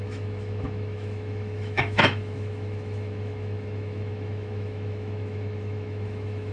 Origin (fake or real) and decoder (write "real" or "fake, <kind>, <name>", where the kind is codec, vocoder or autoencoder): fake, autoencoder, DAC-VAE